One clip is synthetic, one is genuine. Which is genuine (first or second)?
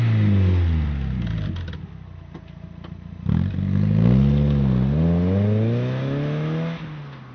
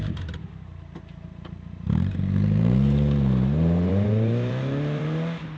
first